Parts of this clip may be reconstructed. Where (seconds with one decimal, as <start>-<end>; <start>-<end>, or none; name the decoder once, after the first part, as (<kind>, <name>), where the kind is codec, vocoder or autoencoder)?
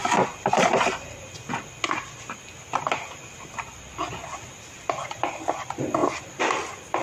none